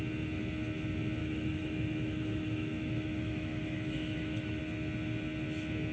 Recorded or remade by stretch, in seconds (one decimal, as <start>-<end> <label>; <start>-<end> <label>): 0.0-1.2 recorded; 1.2-4.6 remade; 4.6-5.9 recorded